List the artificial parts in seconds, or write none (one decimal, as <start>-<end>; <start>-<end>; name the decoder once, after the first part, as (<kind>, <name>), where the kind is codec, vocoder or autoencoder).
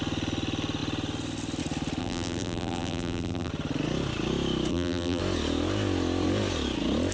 2.0-3.5 (vocoder, BigVGAN v2); 4.7-5.2